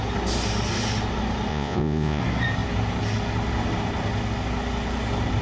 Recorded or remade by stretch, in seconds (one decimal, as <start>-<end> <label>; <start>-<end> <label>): 0.0-1.5 recorded; 1.5-2.2 remade; 2.2-5.4 recorded